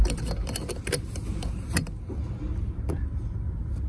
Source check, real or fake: real